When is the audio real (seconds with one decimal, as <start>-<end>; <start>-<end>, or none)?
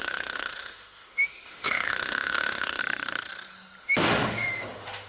2.8-3.8